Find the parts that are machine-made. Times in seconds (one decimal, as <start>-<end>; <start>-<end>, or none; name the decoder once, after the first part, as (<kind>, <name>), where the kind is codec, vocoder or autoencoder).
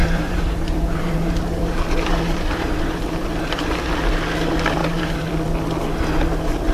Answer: 0.0-3.9 (vocoder, BigVGAN v2); 4.8-5.3